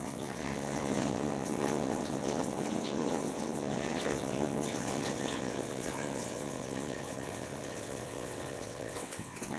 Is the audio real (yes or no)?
no